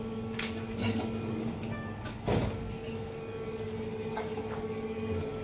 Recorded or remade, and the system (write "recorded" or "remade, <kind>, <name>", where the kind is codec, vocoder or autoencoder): remade, codec, DAC